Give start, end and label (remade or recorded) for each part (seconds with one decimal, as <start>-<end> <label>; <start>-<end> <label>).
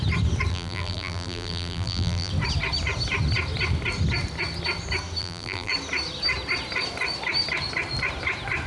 0.0-0.5 recorded; 0.5-2.3 remade; 2.3-5.2 recorded; 5.2-5.7 remade; 5.7-8.7 recorded